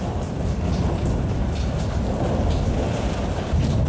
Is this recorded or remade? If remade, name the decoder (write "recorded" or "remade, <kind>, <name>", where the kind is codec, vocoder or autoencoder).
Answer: recorded